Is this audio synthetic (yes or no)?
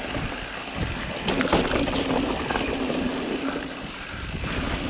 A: no